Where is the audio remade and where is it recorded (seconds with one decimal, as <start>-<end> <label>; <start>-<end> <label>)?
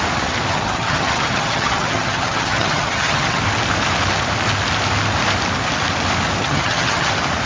0.0-0.5 recorded; 0.5-3.4 remade; 3.4-6.4 recorded; 6.4-7.1 remade; 7.1-7.5 recorded